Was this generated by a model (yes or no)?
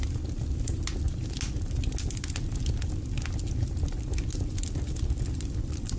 no